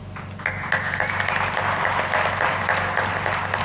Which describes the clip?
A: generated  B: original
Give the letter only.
B